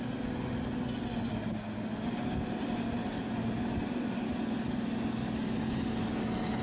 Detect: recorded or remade recorded